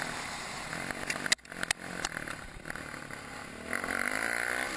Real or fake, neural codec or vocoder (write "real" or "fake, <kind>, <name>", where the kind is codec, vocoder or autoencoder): real